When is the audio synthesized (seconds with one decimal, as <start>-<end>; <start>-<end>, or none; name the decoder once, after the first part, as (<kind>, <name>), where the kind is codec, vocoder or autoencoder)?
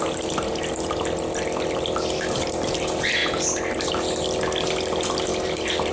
5.3-5.9 (vocoder, BigVGAN v2)